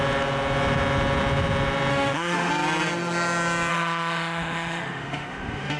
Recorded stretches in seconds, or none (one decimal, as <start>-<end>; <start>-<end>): 0.0-1.9; 2.5-3.7